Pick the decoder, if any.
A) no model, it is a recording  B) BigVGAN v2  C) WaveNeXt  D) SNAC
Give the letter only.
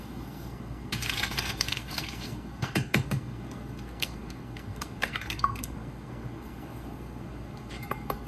D